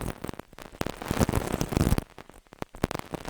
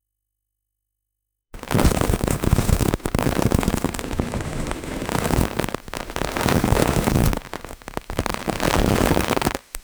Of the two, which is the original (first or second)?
first